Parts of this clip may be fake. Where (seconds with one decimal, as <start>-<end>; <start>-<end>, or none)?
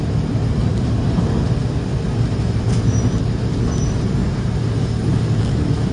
none